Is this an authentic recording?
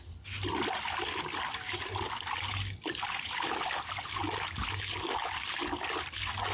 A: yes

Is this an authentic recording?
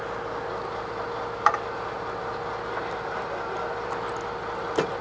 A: yes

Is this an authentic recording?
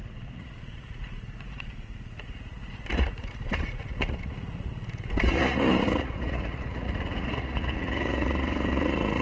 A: no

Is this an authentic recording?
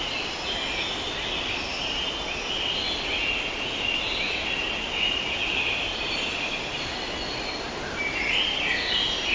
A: yes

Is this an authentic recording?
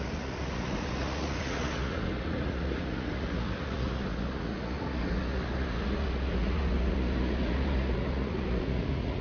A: no